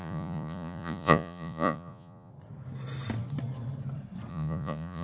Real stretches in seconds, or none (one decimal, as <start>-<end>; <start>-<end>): 2.3-4.3